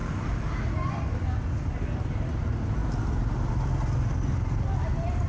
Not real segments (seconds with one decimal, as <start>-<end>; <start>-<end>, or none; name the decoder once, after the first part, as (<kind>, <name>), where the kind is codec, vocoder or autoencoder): none